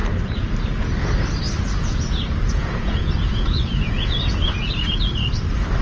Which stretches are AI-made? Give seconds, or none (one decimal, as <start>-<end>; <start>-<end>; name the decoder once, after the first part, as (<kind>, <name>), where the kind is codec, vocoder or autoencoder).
1.8-4.7 (vocoder, Vocos)